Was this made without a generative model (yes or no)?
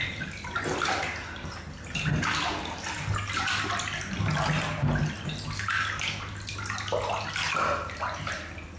yes